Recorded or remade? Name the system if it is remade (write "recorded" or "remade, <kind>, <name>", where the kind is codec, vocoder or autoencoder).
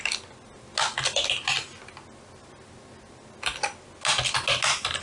recorded